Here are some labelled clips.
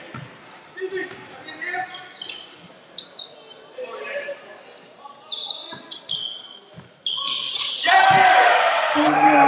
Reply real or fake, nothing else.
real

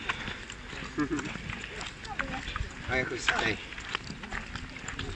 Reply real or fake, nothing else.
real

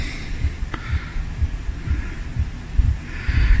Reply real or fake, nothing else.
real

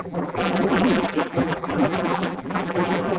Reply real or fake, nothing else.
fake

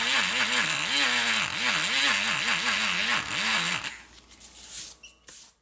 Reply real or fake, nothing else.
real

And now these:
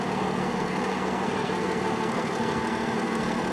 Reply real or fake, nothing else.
fake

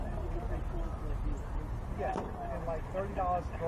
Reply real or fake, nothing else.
real